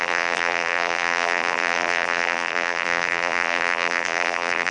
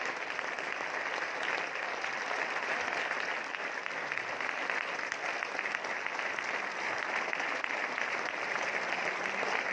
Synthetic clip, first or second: first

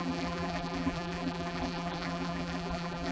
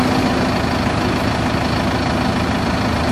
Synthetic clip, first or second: first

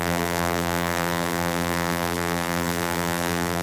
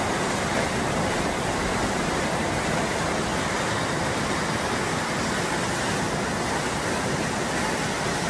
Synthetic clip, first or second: first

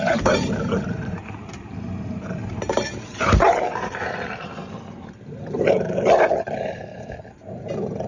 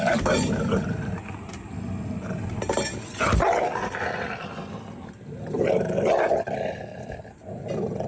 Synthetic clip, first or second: first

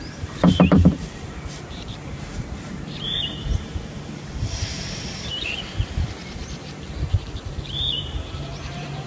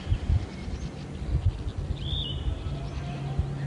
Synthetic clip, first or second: first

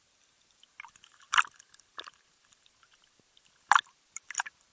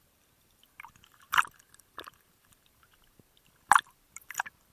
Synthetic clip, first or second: second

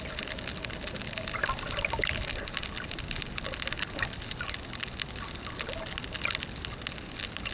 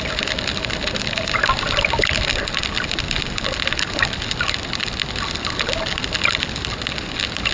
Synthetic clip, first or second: second